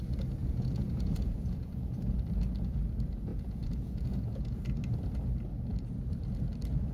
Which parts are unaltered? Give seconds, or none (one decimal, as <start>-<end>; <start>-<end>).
0.0-0.4; 2.2-3.3; 4.6-6.9